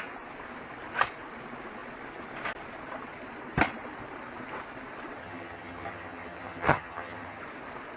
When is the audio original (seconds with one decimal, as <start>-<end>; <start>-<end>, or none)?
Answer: 0.0-5.2; 7.4-8.0

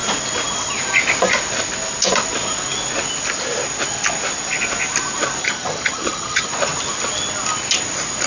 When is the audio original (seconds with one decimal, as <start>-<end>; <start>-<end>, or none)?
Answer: 0.0-5.4; 6.5-8.3

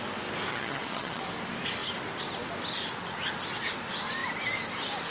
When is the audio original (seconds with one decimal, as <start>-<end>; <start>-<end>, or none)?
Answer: 0.0-0.5; 1.2-5.1

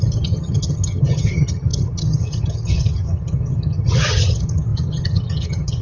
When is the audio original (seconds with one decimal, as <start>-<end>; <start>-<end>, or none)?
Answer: none

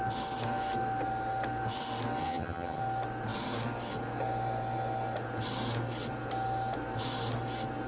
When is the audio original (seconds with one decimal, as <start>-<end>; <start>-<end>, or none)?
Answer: 0.0-2.2; 2.8-7.9